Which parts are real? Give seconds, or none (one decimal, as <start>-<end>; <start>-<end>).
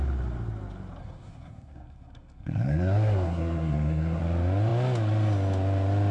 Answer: 0.0-1.0; 4.2-6.1